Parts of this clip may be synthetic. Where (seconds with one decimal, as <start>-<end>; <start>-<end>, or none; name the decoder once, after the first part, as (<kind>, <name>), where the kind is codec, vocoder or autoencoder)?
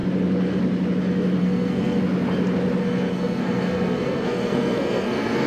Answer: 1.4-2.0 (codec, SNAC); 2.8-5.5